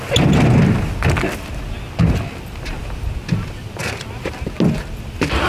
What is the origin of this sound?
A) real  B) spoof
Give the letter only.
A